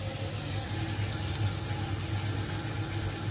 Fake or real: real